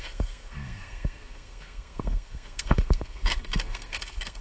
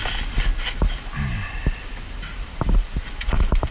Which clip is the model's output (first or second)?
first